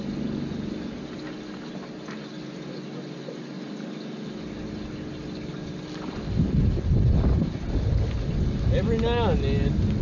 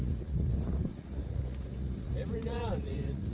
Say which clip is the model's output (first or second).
second